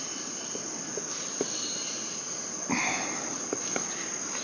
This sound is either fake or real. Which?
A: real